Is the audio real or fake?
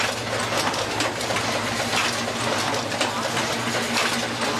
real